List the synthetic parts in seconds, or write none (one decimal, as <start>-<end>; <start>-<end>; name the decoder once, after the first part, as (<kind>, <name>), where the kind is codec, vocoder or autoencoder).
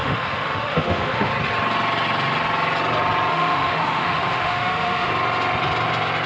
0.0-1.3 (autoencoder, DAC-VAE); 3.3-5.1